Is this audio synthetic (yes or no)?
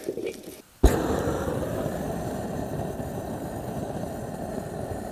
no